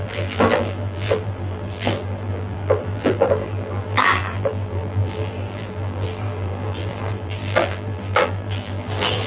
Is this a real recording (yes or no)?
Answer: no